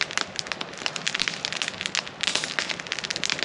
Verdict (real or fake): real